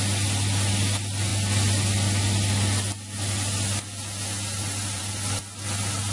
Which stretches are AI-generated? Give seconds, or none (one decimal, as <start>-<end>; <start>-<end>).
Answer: none